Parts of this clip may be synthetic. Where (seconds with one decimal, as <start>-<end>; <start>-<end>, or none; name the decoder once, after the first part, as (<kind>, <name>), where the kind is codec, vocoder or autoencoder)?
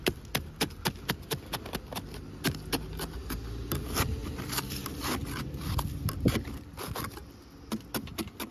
4.2-7.1 (vocoder, BigVGAN v2)